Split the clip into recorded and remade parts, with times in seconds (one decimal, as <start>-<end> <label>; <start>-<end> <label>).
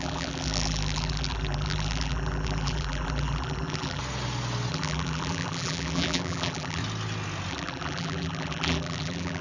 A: 0.0-4.0 remade; 4.0-4.7 recorded; 4.7-6.8 remade; 6.8-7.5 recorded; 7.5-9.4 remade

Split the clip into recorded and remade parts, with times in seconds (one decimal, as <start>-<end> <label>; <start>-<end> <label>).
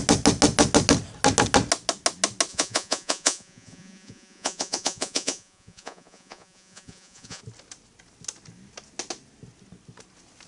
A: 0.0-2.5 recorded; 2.5-7.4 remade; 7.4-10.5 recorded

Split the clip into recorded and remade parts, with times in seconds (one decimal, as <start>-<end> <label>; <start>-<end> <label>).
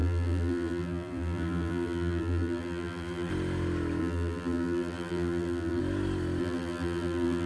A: 0.0-3.3 remade; 3.3-4.0 recorded; 4.0-5.8 remade; 5.8-6.4 recorded; 6.4-7.5 remade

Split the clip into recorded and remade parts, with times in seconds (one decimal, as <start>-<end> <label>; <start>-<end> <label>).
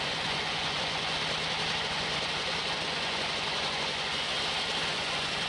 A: 0.0-1.2 remade; 1.2-1.8 recorded; 1.8-4.3 remade; 4.3-4.9 recorded; 4.9-5.5 remade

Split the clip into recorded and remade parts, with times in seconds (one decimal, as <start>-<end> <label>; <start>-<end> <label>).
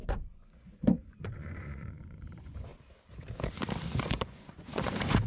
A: 0.0-2.7 remade; 2.7-4.0 recorded; 4.0-5.3 remade